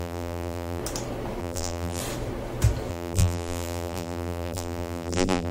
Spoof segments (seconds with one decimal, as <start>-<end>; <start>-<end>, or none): 0.0-0.8; 1.4-2.0; 2.9-5.5